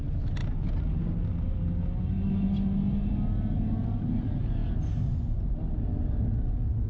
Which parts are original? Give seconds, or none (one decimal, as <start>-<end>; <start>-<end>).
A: 0.0-6.9